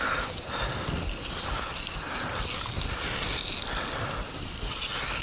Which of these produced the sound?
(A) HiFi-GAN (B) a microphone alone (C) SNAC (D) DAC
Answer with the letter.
B